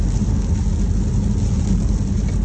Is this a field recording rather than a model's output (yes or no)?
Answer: yes